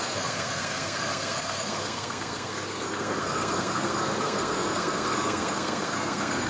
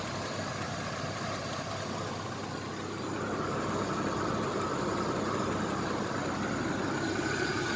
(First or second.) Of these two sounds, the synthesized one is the first